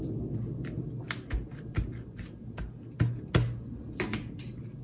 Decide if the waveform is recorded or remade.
recorded